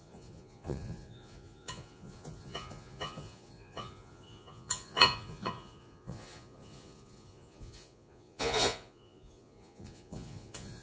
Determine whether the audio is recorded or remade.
remade